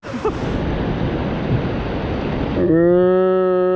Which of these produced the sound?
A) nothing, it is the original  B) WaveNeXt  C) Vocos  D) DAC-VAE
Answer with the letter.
A